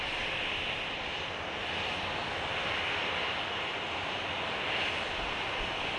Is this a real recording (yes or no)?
yes